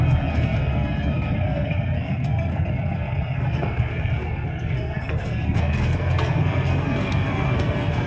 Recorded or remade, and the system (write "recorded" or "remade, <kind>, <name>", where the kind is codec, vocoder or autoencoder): remade, codec, SNAC